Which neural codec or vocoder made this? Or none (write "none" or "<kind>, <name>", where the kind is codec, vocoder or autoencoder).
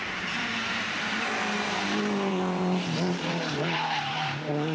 vocoder, BigVGAN v2